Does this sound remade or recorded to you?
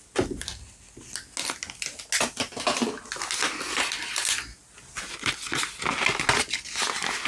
recorded